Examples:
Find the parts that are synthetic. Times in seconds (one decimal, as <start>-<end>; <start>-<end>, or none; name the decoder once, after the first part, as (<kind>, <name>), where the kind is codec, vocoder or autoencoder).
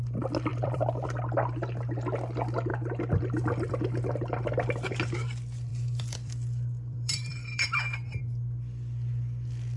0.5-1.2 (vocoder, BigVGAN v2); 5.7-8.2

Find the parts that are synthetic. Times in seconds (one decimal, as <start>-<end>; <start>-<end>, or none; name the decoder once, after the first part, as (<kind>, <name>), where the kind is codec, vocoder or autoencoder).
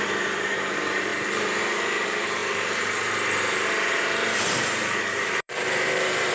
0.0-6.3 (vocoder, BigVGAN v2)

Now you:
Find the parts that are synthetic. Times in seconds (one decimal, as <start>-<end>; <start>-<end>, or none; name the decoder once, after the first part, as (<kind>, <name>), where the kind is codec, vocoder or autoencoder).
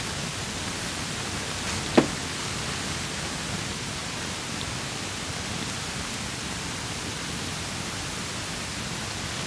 none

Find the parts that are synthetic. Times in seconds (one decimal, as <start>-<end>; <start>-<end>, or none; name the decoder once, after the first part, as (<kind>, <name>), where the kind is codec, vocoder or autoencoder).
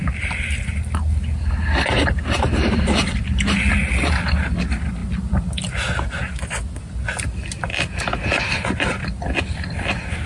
1.9-3.2 (vocoder, BigVGAN v2)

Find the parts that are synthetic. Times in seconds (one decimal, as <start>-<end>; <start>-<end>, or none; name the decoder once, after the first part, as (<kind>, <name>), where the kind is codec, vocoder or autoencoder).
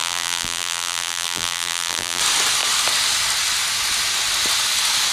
0.0-2.2 (vocoder, BigVGAN v2)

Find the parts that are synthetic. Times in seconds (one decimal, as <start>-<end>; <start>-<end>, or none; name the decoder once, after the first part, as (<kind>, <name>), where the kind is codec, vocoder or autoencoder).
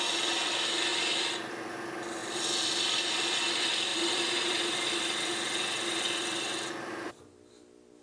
0.9-1.6 (vocoder, BigVGAN v2); 2.2-3.1; 3.9-7.1